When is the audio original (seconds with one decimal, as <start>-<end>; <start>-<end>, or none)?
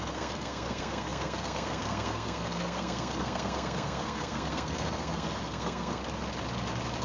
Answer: 6.0-7.0